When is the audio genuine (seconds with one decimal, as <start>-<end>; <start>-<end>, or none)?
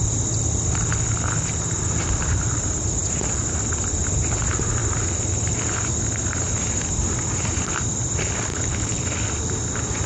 0.0-8.5; 9.0-10.1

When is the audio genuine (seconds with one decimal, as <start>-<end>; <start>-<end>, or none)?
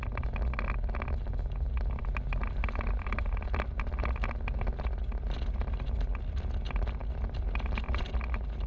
0.0-8.7